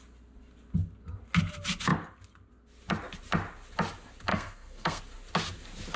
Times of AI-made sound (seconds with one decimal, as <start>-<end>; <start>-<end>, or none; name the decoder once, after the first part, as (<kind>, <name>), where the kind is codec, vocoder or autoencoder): 4.3-5.0 (codec, SNAC)